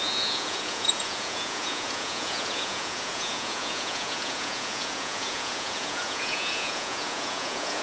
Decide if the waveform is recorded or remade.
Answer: remade